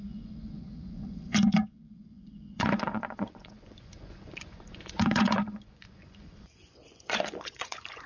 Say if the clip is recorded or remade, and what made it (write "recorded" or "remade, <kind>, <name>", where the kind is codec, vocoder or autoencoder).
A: remade, vocoder, Vocos